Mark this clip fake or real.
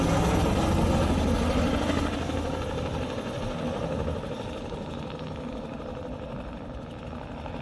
real